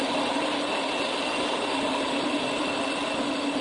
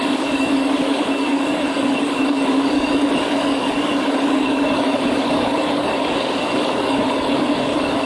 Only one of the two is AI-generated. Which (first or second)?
second